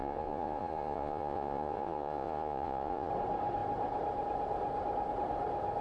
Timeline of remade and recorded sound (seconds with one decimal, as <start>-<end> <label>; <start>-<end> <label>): 0.0-3.1 remade; 3.1-5.8 recorded